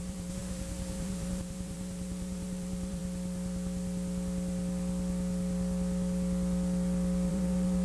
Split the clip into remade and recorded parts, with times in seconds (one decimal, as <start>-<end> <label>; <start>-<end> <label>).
0.0-3.0 remade; 3.0-7.3 recorded; 7.3-7.8 remade